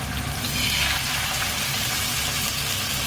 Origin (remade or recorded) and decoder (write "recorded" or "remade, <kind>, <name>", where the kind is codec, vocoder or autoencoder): recorded